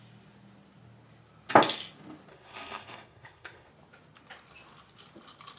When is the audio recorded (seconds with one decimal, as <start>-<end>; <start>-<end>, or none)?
0.0-2.3; 3.7-5.6